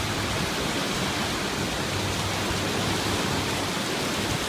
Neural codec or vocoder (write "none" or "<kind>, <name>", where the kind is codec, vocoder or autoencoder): none